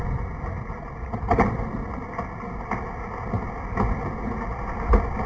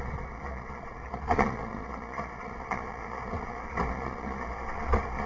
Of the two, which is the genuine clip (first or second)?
first